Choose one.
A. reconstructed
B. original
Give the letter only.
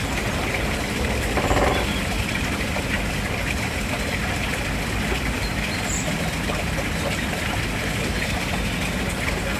B